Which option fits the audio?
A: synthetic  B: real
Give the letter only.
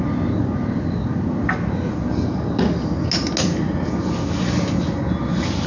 B